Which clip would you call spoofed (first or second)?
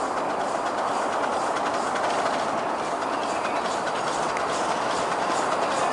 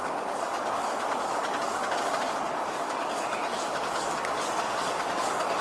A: second